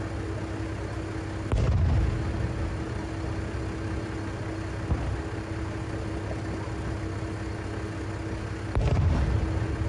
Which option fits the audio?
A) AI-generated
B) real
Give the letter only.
B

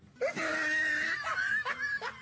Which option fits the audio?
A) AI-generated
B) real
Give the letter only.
B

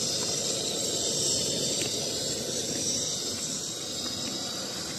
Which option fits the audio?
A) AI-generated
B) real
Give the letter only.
B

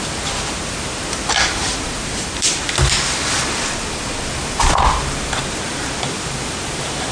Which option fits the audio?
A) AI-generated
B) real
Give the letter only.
A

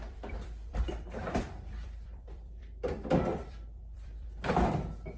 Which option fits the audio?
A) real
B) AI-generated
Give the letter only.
B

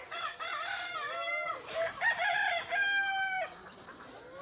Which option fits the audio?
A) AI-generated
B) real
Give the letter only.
A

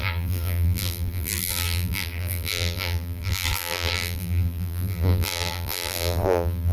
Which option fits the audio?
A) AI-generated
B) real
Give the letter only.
A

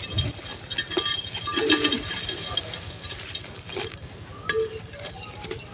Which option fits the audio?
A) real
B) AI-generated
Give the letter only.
A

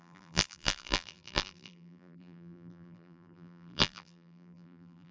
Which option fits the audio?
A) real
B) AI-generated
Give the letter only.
B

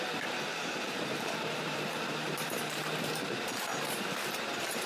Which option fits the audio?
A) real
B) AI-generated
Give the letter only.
B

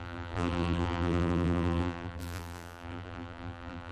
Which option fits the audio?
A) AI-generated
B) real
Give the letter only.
A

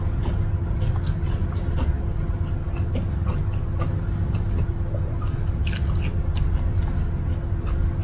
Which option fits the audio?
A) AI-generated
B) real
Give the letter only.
B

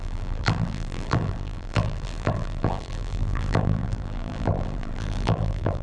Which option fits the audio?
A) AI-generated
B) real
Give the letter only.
A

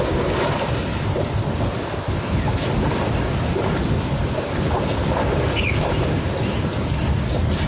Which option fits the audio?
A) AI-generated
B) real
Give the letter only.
B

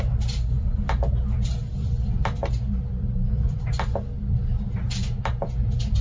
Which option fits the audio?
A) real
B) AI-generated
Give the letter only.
A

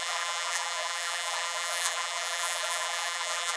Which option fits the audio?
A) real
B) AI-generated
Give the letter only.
B